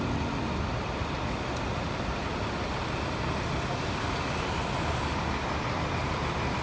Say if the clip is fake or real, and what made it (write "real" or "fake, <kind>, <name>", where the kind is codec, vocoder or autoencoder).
real